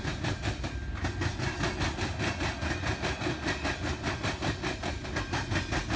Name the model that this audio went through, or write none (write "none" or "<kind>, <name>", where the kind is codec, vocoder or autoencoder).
none